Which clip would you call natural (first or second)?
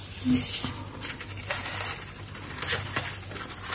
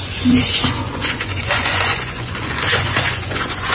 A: first